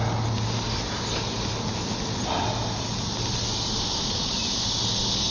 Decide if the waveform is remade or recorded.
recorded